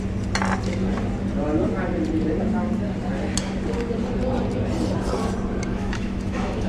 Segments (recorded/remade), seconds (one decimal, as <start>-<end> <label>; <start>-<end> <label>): 0.0-5.7 recorded; 5.7-6.7 remade

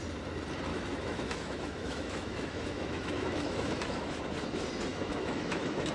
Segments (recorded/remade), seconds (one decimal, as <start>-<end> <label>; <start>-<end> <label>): 0.0-0.7 recorded; 0.7-4.2 remade; 4.2-4.9 recorded; 4.9-5.9 remade

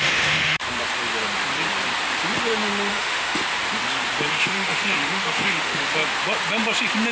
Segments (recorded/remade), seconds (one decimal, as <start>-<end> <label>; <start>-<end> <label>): 0.0-0.6 remade; 0.6-2.9 recorded; 2.9-3.4 remade; 3.4-4.3 recorded; 4.3-5.9 remade; 5.9-7.1 recorded

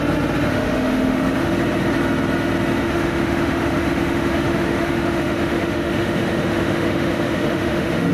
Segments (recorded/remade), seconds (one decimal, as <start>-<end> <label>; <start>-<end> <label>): 0.0-0.5 recorded; 0.5-1.5 remade; 1.5-2.8 recorded; 2.8-8.1 remade

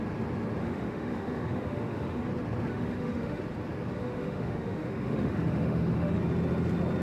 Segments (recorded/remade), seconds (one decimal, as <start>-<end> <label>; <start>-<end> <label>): 0.0-0.6 recorded; 0.6-2.3 remade; 2.3-2.7 recorded; 2.7-3.4 remade; 3.4-3.9 recorded; 3.9-6.2 remade; 6.2-7.0 recorded

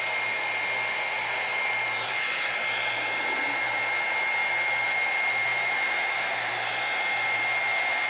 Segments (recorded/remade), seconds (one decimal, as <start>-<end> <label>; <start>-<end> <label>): 0.0-8.1 recorded